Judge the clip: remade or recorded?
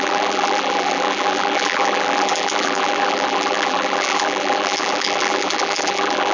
remade